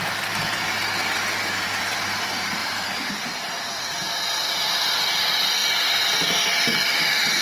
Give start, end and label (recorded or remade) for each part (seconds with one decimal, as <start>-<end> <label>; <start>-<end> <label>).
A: 0.0-2.6 recorded; 2.6-3.4 remade; 3.4-7.4 recorded